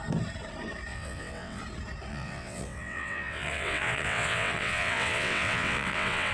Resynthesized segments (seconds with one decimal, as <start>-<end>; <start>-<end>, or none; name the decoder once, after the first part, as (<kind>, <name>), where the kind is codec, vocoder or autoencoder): 0.9-1.6 (vocoder, WaveNeXt); 2.1-6.3